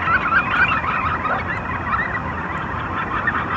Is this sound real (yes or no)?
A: yes